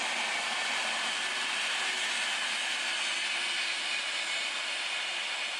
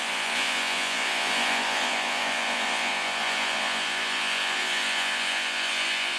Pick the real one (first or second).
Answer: first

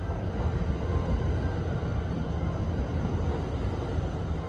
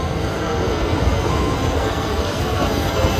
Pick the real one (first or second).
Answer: first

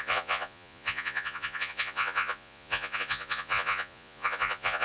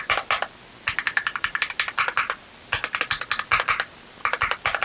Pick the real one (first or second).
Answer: second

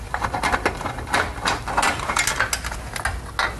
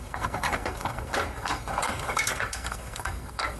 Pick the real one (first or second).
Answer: first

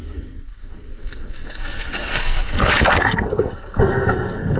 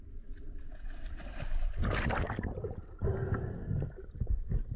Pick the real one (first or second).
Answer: second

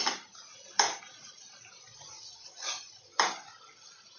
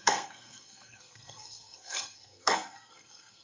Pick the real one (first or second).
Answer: first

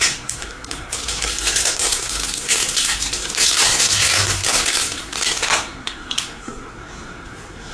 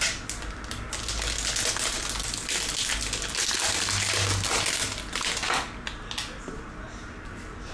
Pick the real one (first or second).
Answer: second